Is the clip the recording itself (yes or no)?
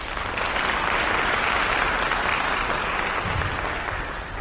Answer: yes